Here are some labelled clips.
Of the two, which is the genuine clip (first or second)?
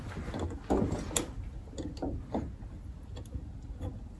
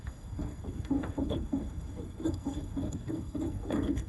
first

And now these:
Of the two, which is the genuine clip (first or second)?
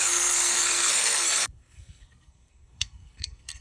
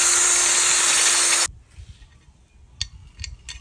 second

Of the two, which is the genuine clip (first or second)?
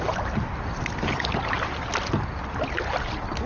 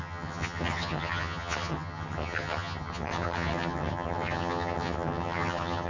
first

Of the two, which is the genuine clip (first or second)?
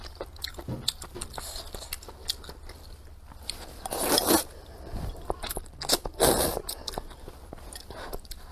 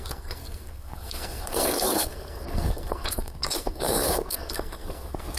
first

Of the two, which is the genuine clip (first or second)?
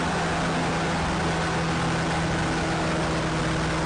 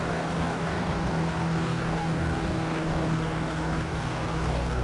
first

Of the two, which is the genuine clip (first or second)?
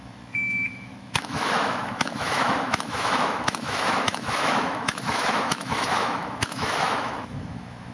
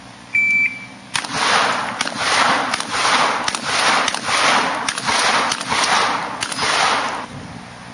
second